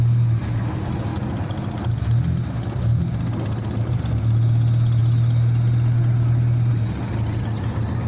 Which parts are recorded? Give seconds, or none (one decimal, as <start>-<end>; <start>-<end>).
0.0-8.1